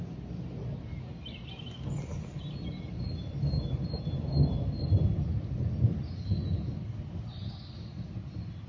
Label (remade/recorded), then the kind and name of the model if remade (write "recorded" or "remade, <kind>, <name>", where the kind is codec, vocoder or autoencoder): recorded